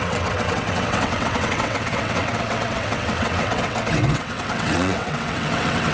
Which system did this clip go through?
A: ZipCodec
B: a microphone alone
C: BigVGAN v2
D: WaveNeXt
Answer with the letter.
D